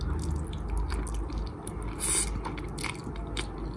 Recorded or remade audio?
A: recorded